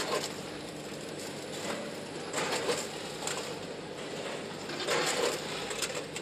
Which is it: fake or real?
real